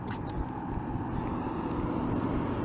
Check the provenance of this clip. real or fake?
real